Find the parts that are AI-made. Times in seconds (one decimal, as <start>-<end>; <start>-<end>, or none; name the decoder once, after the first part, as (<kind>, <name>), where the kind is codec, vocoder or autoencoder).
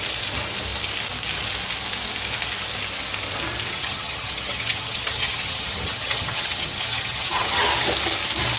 3.7-7.6 (vocoder, HiFi-GAN)